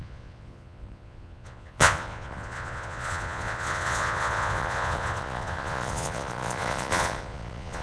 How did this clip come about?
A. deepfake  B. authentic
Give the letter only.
A